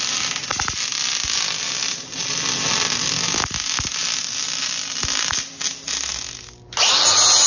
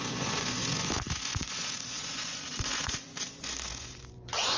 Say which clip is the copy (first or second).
second